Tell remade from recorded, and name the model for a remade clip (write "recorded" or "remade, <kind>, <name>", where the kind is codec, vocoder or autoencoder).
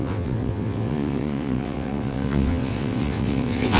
remade, vocoder, WaveNeXt